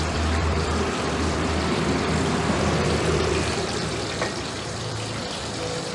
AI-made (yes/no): yes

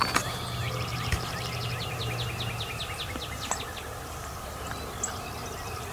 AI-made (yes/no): no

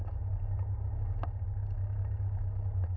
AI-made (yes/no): no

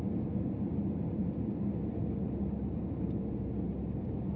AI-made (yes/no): no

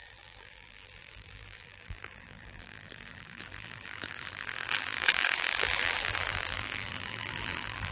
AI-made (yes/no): yes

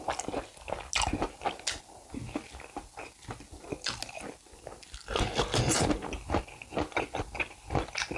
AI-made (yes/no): no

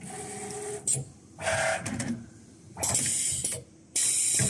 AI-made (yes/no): no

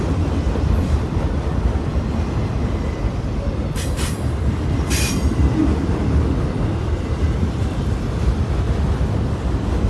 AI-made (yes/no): yes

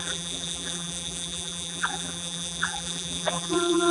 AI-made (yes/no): yes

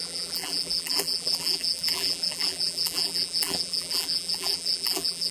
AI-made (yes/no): yes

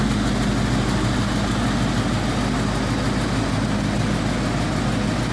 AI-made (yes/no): no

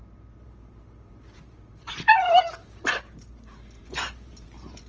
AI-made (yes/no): yes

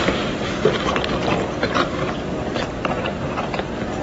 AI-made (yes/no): yes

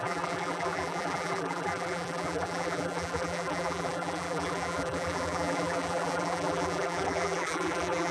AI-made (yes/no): yes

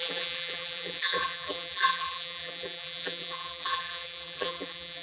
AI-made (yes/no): yes